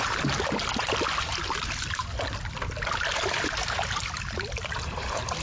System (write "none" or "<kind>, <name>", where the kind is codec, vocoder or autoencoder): none